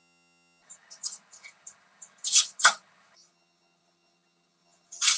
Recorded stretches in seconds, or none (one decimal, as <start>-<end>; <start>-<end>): none